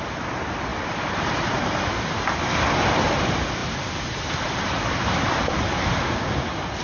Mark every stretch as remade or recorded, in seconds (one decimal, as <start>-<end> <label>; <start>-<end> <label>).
0.0-6.8 recorded